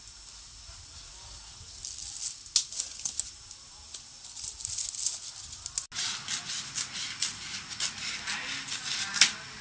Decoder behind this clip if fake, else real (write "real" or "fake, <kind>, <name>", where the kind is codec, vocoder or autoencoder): real